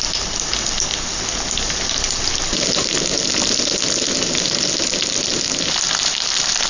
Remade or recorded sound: recorded